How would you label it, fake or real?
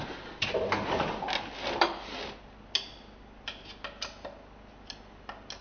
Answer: real